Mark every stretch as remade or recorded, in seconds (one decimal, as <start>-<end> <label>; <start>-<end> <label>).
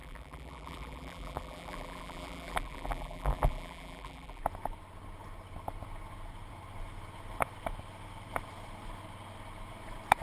0.0-4.4 remade; 4.4-10.2 recorded